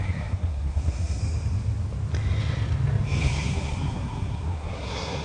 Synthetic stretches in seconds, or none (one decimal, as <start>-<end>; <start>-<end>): 0.0-1.2; 3.2-5.2